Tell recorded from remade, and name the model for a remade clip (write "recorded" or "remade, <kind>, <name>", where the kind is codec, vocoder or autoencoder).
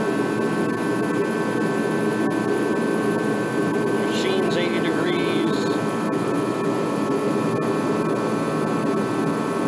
recorded